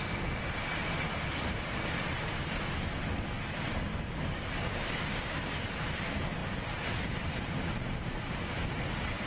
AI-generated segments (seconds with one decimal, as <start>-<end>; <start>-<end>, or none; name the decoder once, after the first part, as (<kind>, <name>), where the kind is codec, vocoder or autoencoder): 3.9-5.9 (codec, DAC)